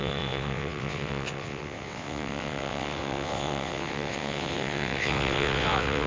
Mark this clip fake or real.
fake